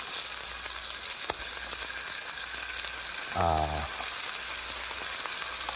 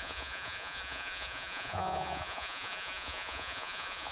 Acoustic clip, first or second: first